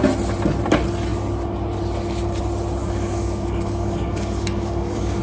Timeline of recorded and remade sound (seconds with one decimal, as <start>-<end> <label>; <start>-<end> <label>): 0.0-2.8 recorded; 2.8-5.2 remade